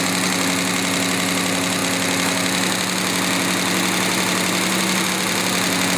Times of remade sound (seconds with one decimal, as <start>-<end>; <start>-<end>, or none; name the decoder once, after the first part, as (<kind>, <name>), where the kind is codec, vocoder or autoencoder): none